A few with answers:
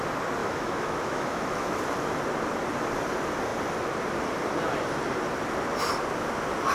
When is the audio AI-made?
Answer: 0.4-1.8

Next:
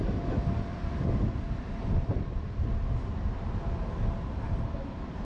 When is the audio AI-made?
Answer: 0.7-2.7

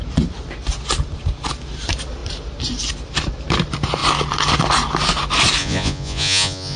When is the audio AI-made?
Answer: 5.6-6.8